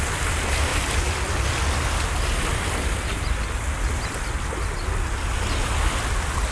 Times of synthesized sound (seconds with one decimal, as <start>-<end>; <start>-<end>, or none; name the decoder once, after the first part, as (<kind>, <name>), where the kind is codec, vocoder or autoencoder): none